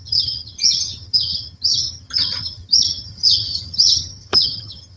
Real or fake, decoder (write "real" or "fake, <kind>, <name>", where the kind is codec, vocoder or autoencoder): fake, vocoder, HiFi-GAN